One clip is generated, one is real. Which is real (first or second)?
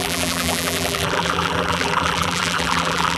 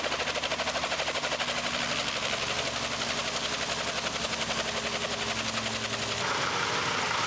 second